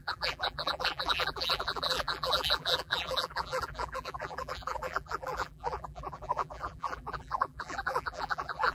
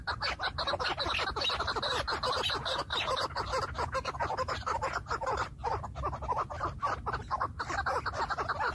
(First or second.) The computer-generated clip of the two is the first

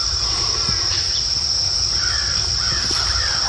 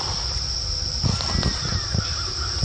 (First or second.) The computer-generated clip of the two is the first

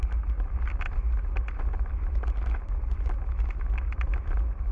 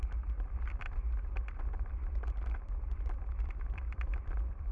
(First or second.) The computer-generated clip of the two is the second